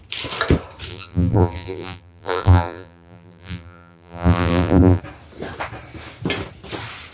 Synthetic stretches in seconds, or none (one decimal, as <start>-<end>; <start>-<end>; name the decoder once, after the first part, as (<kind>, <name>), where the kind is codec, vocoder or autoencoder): 0.9-5.0 (vocoder, BigVGAN v2)